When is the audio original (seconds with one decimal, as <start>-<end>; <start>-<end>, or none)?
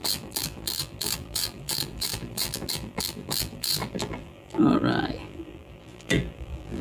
none